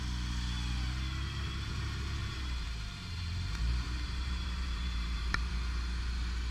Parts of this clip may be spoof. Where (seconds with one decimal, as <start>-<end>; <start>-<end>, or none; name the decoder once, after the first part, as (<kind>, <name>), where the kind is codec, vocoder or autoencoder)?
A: 2.2-5.5 (vocoder, BigVGAN v2)